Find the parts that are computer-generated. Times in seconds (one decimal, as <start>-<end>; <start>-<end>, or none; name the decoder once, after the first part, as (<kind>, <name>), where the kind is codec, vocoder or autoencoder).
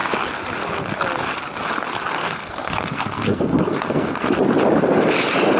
2.2-4.4 (codec, SNAC)